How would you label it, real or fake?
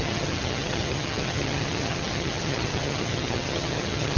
fake